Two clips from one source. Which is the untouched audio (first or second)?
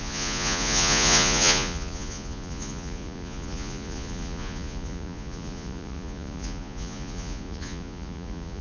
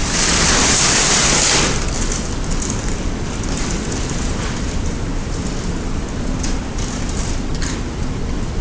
second